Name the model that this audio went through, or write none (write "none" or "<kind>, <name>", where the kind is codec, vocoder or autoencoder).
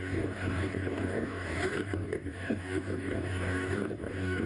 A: codec, DAC